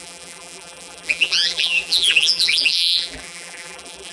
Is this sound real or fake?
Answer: fake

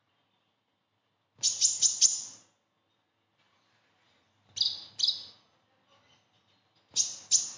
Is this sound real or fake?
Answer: real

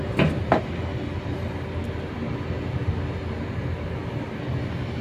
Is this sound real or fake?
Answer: real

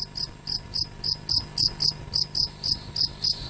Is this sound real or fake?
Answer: real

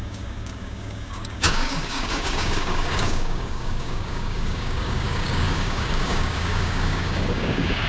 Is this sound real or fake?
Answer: fake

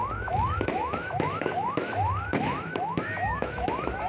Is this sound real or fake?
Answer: fake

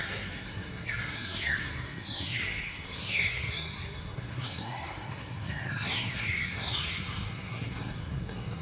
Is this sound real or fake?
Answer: fake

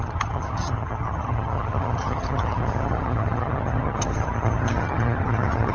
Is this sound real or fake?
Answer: fake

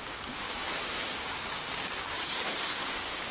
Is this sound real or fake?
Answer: fake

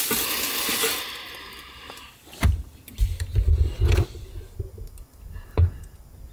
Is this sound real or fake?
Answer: real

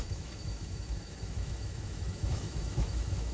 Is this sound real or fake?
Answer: fake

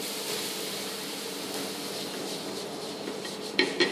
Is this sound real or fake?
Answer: fake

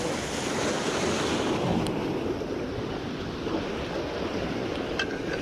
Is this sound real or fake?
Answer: real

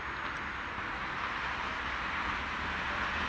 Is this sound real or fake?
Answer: real